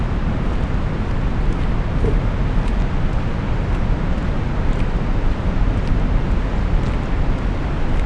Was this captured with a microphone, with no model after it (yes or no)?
yes